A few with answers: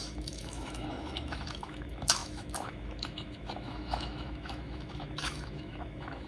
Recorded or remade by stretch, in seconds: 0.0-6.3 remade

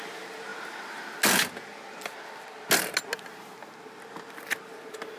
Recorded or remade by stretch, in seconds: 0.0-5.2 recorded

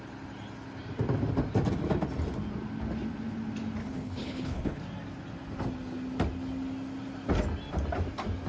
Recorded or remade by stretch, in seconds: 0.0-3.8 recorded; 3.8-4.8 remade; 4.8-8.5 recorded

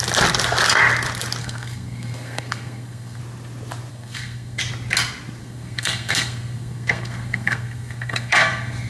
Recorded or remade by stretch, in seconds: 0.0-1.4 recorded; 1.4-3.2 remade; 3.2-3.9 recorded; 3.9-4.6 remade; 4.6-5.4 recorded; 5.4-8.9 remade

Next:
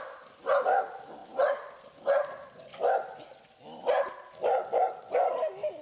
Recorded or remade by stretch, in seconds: 0.0-5.8 recorded

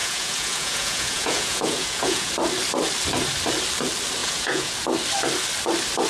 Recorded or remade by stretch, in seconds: 0.0-2.3 remade; 2.3-4.2 recorded; 4.2-4.7 remade; 4.7-6.1 recorded

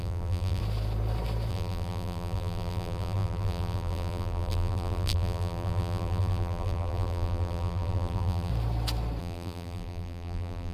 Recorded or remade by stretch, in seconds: 0.0-0.6 remade; 0.6-1.5 recorded; 1.5-8.5 remade; 8.5-9.2 recorded; 9.2-10.7 remade